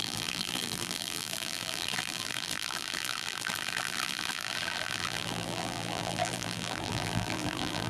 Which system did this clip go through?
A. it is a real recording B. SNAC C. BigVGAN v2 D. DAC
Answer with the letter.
C